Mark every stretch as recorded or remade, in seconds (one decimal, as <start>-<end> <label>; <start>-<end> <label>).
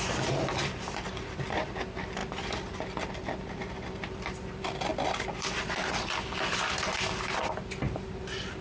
0.0-8.6 remade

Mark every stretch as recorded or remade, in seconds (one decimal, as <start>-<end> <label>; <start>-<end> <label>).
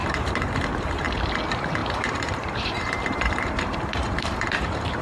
0.0-1.3 remade; 1.3-1.8 recorded; 1.8-5.0 remade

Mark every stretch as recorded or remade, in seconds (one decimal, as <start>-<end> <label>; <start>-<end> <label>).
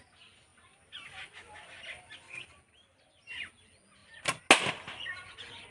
0.0-5.7 recorded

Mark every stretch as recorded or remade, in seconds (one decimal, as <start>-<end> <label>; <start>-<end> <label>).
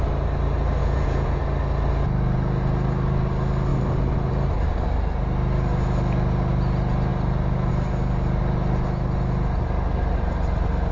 0.0-0.8 recorded; 0.8-1.4 remade; 1.4-10.9 recorded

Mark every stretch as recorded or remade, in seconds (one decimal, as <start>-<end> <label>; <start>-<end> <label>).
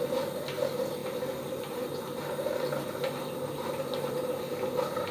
0.0-5.1 recorded